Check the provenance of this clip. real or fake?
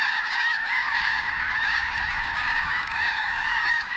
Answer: fake